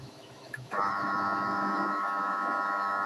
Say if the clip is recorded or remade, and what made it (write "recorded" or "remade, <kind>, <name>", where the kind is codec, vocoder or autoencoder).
remade, autoencoder, DAC-VAE